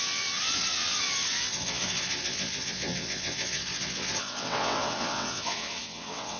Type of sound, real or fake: fake